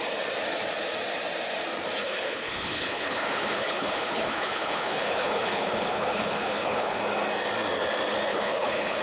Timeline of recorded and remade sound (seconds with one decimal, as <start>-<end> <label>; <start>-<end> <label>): 0.0-2.0 recorded; 2.0-7.0 remade; 7.0-8.3 recorded; 8.3-9.0 remade